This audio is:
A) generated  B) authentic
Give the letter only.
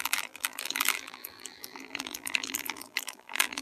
A